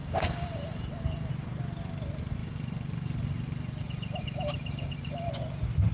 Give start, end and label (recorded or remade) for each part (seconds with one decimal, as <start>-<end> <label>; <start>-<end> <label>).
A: 0.0-1.3 remade; 1.3-2.4 recorded; 2.4-5.3 remade; 5.3-5.9 recorded